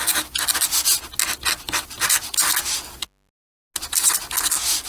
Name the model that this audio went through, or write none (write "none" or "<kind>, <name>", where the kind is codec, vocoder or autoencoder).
none